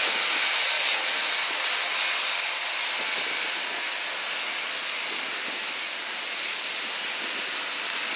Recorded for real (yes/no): yes